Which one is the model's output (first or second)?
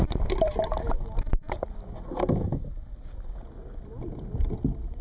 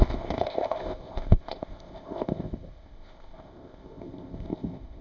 second